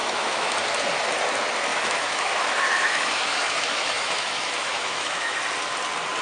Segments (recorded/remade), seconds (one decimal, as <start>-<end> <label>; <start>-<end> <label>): 0.0-0.5 remade; 0.5-1.7 recorded; 1.7-5.4 remade; 5.4-6.2 recorded